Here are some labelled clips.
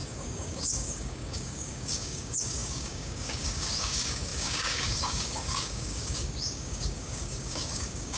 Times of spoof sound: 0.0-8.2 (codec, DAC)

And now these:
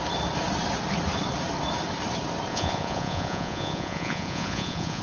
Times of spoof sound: 2.5-5.0 (vocoder, Vocos)

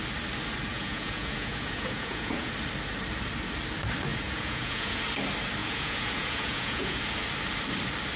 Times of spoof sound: 0.7-2.5 (vocoder, Vocos); 4.1-5.0; 5.6-7.0

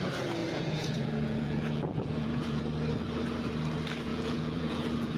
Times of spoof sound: 0.4-2.6 (vocoder, Vocos); 4.1-5.2

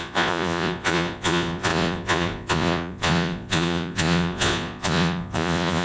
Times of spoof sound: 0.0-5.8 (vocoder, Vocos)

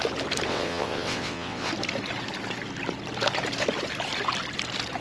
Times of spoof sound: 0.5-1.7 (vocoder, WaveNeXt)

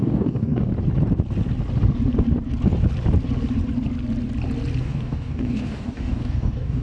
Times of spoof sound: 0.0-0.7 (codec, DAC); 4.8-6.8

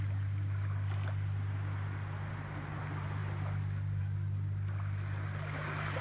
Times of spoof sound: none